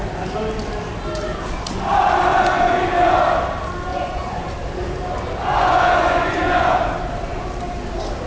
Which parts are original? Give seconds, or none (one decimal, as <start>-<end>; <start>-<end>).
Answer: 0.0-2.3; 2.8-3.9; 4.5-5.5; 6.8-8.3